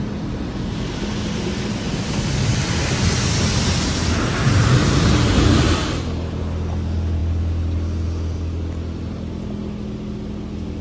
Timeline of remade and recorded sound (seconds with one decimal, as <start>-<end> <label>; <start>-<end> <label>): 0.0-10.8 recorded

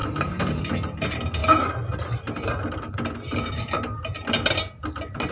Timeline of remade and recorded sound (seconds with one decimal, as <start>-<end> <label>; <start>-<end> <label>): 0.0-0.6 remade; 0.6-5.3 recorded

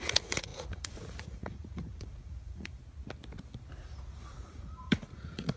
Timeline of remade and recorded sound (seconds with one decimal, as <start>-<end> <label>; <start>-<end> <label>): 0.0-2.8 remade; 2.8-3.7 recorded; 3.7-5.6 remade